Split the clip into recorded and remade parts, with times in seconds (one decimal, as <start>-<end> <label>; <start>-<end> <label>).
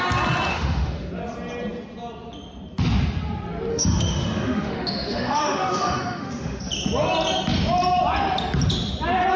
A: 0.0-0.5 recorded; 0.5-1.1 remade; 1.1-3.7 recorded; 3.7-6.6 remade; 6.6-9.4 recorded